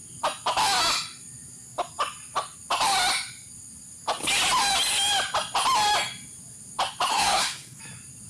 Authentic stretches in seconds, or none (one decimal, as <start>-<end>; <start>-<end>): 0.0-7.1; 7.8-8.3